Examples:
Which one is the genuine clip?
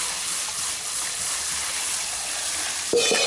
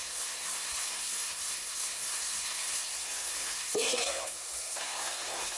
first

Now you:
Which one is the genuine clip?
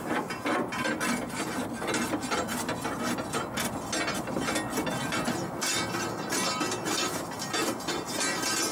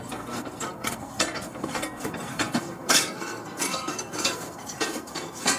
first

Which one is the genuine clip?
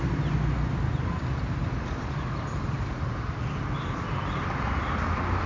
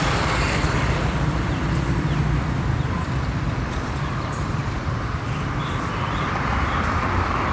first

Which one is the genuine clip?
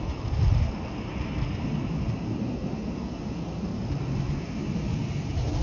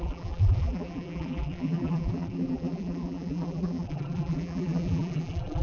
first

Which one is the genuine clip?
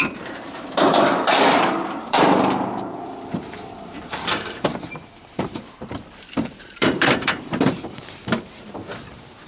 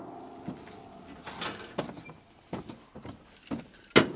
second